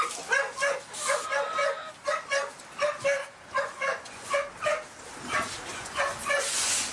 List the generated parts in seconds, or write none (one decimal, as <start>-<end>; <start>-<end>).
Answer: 3.2-4.5; 5.7-6.9